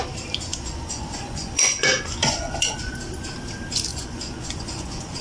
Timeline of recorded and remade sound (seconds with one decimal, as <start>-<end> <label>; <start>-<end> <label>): 0.0-0.5 recorded; 0.5-2.9 remade; 2.9-3.9 recorded; 3.9-5.2 remade